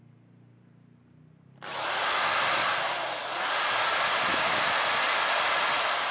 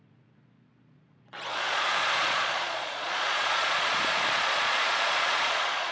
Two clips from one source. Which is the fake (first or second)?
second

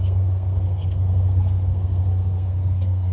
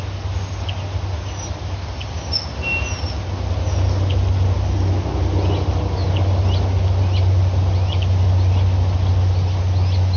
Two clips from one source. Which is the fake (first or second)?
first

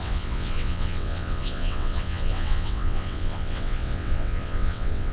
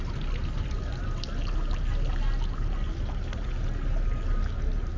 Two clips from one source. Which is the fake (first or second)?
first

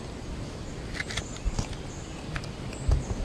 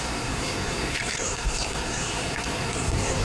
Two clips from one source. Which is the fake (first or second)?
second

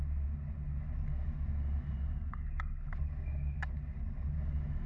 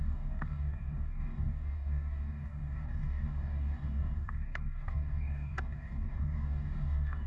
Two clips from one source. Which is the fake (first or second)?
second